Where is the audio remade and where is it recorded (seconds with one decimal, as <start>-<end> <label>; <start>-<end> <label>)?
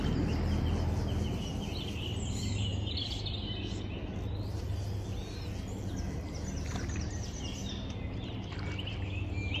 0.0-9.6 recorded